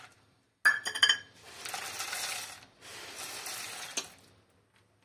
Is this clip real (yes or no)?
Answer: yes